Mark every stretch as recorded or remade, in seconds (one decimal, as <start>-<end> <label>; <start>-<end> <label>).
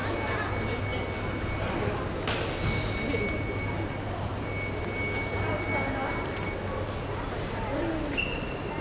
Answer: 0.0-8.8 recorded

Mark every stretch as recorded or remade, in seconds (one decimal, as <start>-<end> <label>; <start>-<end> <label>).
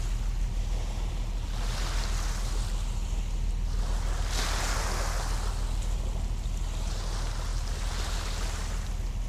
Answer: 0.0-9.3 recorded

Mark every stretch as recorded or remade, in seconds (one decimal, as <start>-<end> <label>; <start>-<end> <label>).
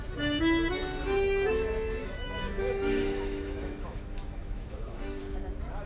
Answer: 0.0-2.0 recorded; 2.0-5.2 remade; 5.2-5.9 recorded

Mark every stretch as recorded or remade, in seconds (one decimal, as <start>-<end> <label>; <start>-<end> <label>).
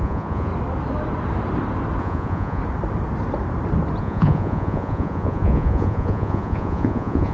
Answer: 0.0-0.5 remade; 0.5-2.0 recorded; 2.0-2.6 remade; 2.6-4.0 recorded; 4.0-7.3 remade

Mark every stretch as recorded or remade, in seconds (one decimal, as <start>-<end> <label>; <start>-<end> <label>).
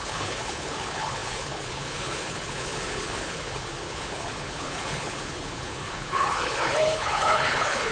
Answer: 0.0-7.9 remade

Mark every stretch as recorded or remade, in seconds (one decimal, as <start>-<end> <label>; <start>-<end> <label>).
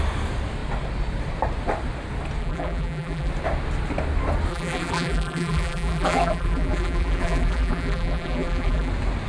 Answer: 0.0-2.4 recorded; 2.4-3.3 remade; 3.3-4.5 recorded; 4.5-8.9 remade; 8.9-9.3 recorded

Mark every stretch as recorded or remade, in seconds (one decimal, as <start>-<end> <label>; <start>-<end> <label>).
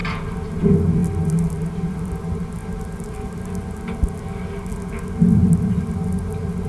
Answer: 0.0-6.7 recorded